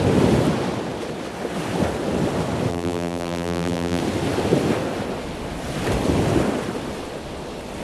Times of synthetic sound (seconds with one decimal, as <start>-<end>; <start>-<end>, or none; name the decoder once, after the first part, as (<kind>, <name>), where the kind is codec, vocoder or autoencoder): 2.7-4.0 (vocoder, BigVGAN v2)